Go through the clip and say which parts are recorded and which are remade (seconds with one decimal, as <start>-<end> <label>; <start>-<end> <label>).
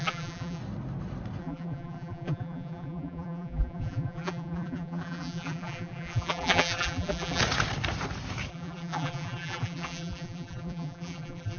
0.0-0.6 remade; 0.6-1.4 recorded; 1.4-7.4 remade; 7.4-8.5 recorded; 8.5-11.6 remade